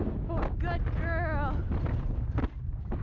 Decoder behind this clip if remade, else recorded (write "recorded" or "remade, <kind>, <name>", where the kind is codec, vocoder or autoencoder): recorded